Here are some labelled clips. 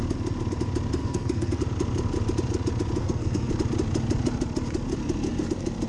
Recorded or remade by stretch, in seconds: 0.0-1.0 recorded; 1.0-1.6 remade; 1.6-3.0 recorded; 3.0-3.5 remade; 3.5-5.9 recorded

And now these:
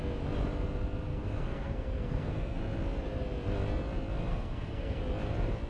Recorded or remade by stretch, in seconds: 0.0-1.1 recorded; 1.1-2.6 remade; 2.6-4.3 recorded; 4.3-5.0 remade; 5.0-5.7 recorded